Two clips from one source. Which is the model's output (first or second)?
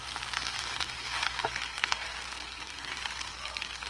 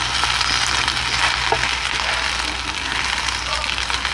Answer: first